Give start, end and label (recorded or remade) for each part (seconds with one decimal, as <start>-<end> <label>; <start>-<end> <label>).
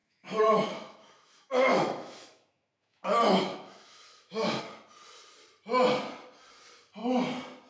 0.0-4.6 remade; 4.6-7.7 recorded